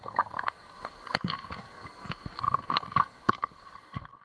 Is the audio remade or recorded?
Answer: remade